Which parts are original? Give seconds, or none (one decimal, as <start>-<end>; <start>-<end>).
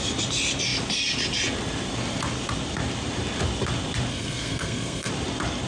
0.0-4.1; 5.1-5.7